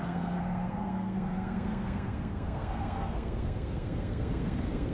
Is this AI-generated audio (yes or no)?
yes